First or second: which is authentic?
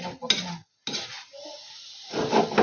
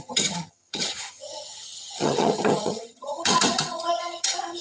first